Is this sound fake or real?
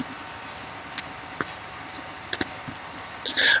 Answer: real